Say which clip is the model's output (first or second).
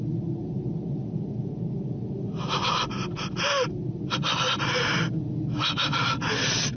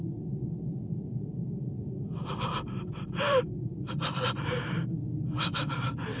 second